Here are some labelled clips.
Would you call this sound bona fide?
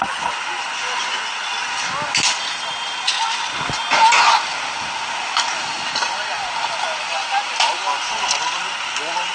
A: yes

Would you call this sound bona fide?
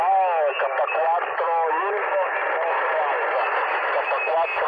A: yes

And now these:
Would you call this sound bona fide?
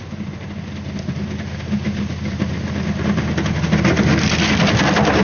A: yes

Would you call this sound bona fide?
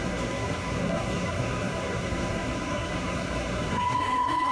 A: no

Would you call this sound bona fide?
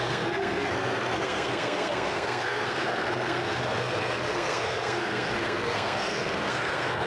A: no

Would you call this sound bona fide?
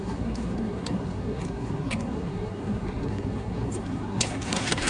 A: no